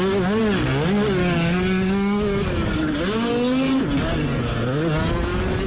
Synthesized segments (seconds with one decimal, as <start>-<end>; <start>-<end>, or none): 1.2-3.0